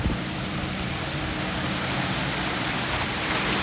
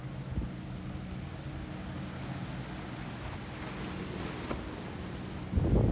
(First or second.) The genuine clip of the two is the second